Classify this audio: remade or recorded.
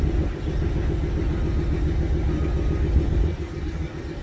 recorded